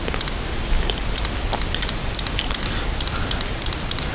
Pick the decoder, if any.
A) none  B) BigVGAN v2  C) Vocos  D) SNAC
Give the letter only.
A